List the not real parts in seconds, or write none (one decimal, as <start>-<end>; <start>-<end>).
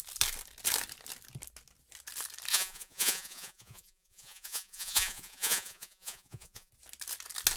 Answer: 2.5-6.7